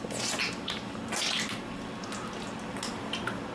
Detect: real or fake real